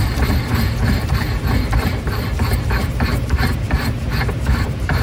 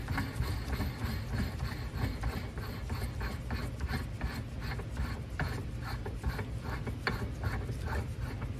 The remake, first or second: first